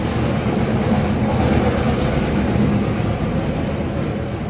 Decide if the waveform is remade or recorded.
recorded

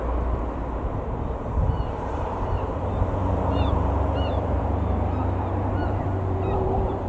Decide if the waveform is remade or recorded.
remade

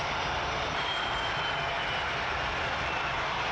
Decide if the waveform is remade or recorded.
remade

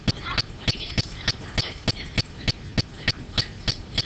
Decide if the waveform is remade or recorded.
recorded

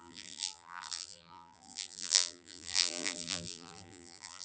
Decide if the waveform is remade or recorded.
remade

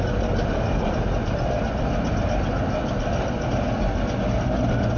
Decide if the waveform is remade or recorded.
recorded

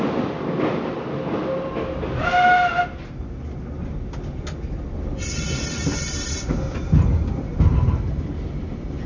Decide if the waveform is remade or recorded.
recorded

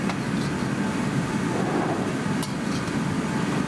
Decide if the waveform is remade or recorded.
recorded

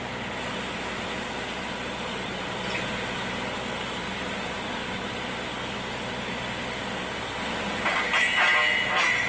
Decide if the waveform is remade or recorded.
recorded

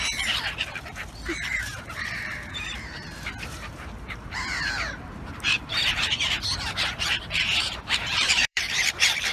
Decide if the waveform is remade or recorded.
remade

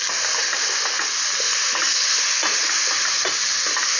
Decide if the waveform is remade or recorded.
recorded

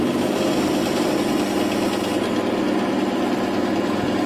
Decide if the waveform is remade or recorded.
recorded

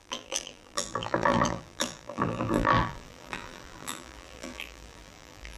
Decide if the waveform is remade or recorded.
remade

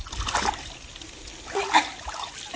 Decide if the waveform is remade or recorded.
recorded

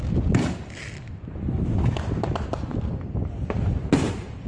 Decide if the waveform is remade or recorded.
recorded